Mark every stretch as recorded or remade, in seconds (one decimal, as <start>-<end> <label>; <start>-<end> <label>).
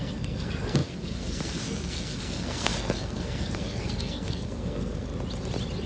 0.0-5.1 remade; 5.1-5.9 recorded